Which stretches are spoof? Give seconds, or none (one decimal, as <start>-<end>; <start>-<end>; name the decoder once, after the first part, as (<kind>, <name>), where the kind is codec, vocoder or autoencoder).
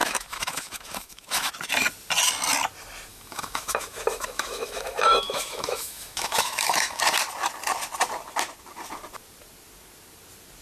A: 0.0-1.5 (autoencoder, DAC-VAE); 3.1-7.0